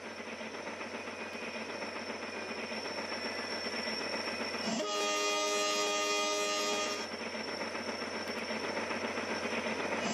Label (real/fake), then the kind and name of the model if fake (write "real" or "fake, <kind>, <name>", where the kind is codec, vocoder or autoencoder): real